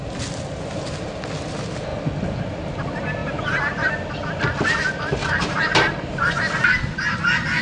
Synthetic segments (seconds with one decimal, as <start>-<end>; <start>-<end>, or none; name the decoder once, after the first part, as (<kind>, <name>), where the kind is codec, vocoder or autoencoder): 5.2-6.3 (vocoder, BigVGAN v2)